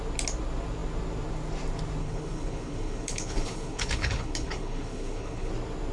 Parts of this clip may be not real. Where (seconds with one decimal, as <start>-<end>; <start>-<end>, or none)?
2.0-5.5